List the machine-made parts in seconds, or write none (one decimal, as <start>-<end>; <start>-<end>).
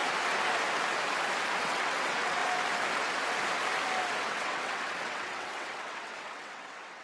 1.6-2.4; 4.2-7.0